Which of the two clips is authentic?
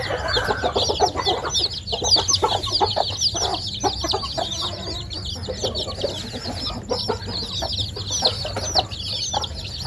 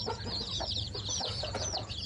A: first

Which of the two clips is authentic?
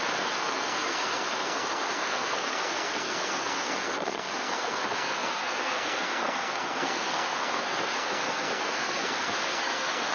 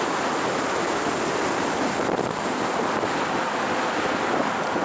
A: second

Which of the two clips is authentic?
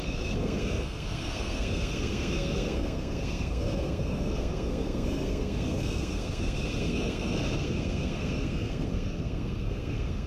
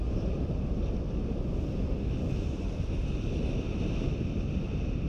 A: second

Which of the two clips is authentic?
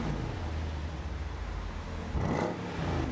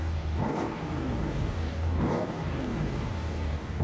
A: first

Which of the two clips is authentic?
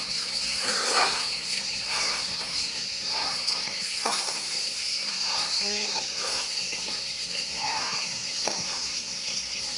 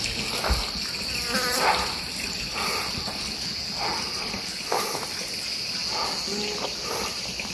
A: second